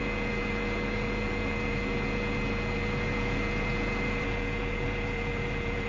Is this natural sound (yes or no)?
no